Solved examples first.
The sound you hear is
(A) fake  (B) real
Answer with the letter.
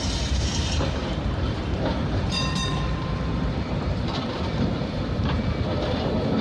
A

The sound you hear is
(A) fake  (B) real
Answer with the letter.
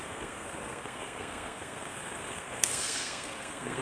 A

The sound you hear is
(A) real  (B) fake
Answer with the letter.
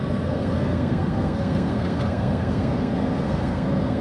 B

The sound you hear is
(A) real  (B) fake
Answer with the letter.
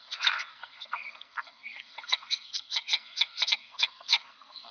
B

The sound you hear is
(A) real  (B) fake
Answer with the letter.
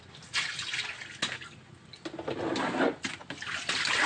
A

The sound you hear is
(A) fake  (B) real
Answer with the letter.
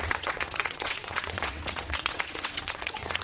A